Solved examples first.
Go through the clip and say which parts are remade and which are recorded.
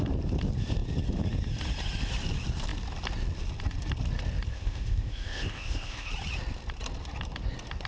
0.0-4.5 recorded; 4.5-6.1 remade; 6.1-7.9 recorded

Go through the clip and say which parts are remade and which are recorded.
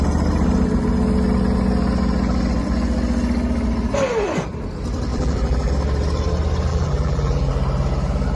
0.0-5.1 recorded; 5.1-5.7 remade; 5.7-6.7 recorded; 6.7-7.5 remade; 7.5-8.4 recorded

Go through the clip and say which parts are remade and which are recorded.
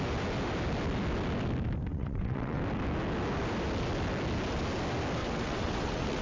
0.0-1.9 recorded; 1.9-2.6 remade; 2.6-5.2 recorded; 5.2-6.2 remade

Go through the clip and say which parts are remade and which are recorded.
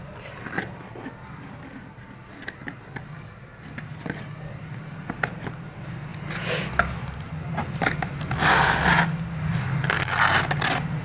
0.0-11.0 recorded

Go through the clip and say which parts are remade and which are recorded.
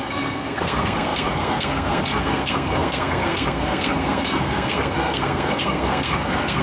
0.0-6.6 remade